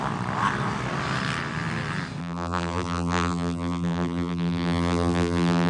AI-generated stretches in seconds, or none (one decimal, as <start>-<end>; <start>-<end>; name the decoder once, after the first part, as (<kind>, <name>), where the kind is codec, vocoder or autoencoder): 2.2-5.7 (vocoder, BigVGAN v2)